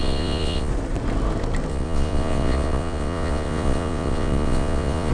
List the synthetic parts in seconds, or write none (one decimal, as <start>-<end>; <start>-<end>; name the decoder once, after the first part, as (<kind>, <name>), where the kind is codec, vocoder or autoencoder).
0.0-0.7 (vocoder, Vocos); 1.7-5.1